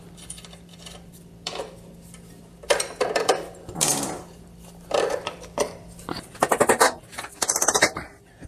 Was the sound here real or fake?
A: fake